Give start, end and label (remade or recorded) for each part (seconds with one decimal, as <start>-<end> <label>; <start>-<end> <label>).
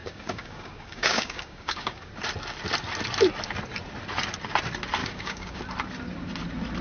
0.0-2.1 remade; 2.1-5.0 recorded; 5.0-5.6 remade; 5.6-6.8 recorded